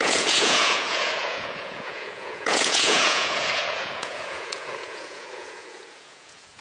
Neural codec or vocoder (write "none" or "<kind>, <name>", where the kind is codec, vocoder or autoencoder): vocoder, Vocos